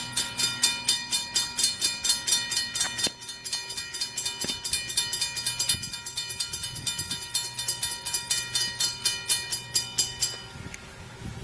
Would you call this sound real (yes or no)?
yes